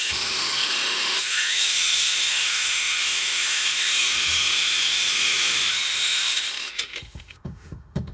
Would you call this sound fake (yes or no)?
yes